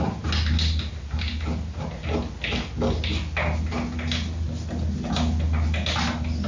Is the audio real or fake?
real